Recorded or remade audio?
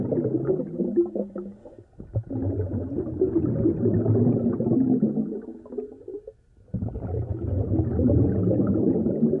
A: recorded